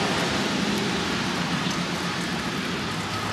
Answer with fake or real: real